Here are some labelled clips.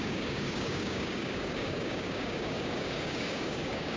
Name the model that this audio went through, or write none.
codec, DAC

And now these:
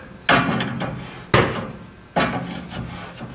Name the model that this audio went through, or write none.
none